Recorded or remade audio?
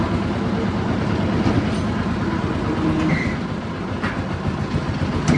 recorded